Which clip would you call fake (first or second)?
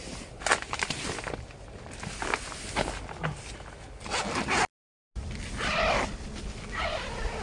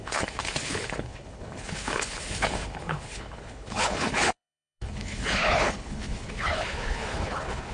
second